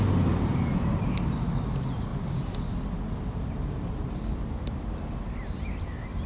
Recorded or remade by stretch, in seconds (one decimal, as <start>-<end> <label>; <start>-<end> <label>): 0.0-6.3 recorded